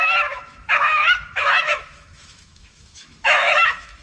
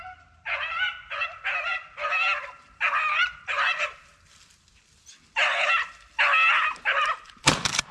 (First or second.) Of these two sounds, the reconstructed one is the first